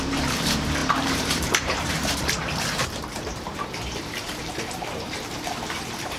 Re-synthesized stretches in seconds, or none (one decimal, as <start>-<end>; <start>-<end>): 0.0-6.2